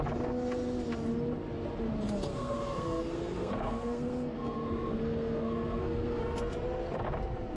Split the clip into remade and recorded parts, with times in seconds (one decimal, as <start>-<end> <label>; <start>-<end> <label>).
0.0-2.3 recorded; 2.3-6.2 remade; 6.2-7.6 recorded